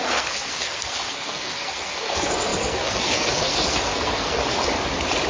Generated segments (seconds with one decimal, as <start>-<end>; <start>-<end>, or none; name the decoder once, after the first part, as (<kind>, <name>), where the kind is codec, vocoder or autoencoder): 0.0-4.4 (codec, SNAC)

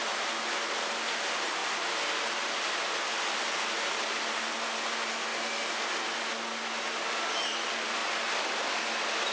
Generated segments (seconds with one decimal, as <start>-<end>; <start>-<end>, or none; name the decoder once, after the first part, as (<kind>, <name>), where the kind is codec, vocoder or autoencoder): none

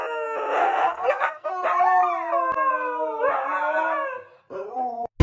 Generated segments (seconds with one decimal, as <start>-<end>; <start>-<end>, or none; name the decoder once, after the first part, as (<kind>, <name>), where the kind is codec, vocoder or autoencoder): 0.6-1.5 (codec, SNAC)

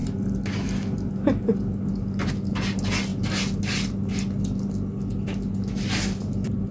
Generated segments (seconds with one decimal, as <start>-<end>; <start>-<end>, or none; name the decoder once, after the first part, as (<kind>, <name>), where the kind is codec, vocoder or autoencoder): none